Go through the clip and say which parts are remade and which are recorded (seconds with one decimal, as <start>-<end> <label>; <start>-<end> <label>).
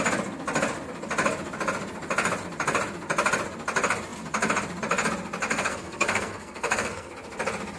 0.0-5.5 recorded; 5.5-7.1 remade; 7.1-7.8 recorded